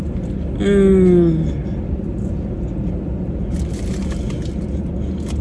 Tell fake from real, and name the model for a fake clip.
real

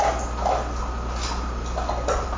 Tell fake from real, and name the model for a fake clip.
real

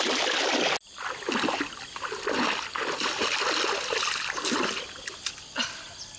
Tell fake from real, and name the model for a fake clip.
real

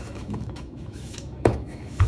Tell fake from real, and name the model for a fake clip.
fake, autoencoder, DAC-VAE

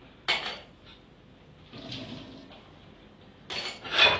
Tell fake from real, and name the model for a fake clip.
real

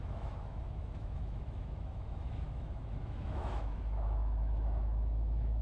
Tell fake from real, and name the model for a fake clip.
fake, autoencoder, DAC-VAE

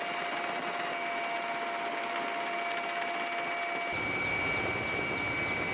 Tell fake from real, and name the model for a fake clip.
real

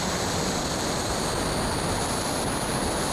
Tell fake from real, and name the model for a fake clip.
real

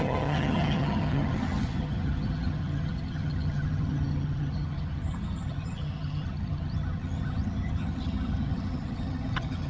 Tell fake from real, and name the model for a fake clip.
fake, vocoder, HiFi-GAN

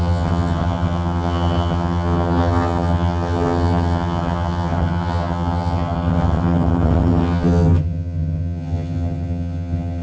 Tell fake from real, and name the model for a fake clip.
fake, vocoder, HiFi-GAN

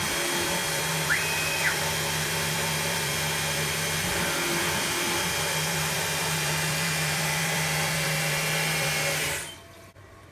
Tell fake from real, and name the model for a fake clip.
fake, vocoder, BigVGAN v2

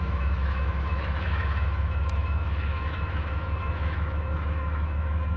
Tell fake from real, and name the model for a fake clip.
fake, autoencoder, DAC-VAE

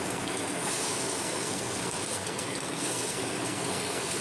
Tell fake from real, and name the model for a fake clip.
fake, codec, SNAC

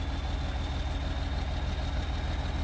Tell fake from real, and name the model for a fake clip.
real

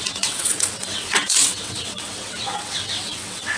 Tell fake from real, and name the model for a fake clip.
fake, vocoder, WaveNeXt